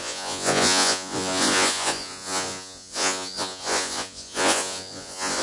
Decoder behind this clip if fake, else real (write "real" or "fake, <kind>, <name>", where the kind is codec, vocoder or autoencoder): fake, vocoder, Vocos